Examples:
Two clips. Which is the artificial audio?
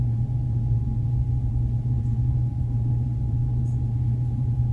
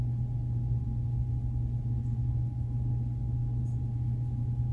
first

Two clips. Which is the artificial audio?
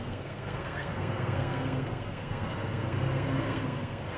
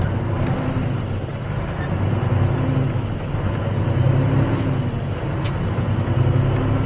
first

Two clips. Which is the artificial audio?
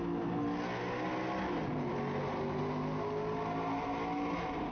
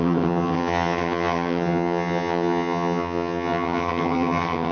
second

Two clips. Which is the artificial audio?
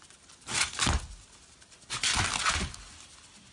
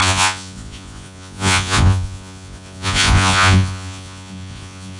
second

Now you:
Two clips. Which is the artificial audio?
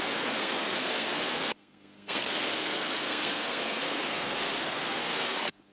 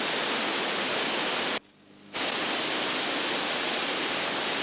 first